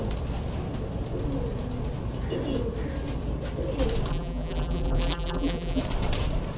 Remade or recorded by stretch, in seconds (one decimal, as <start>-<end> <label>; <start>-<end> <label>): 0.0-4.1 recorded; 4.1-5.8 remade; 5.8-6.6 recorded